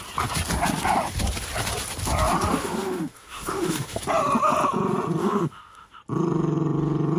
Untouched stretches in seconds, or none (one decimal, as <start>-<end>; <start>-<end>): 0.0-2.6; 4.0-5.2; 6.0-7.2